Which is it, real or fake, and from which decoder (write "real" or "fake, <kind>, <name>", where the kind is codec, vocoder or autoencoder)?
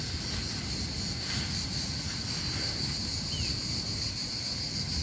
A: real